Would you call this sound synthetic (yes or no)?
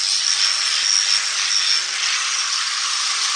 no